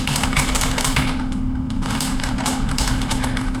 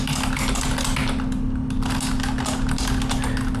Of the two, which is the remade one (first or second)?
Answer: first